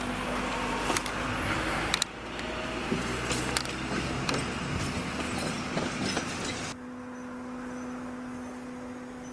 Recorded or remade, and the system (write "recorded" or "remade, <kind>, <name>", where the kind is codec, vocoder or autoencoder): recorded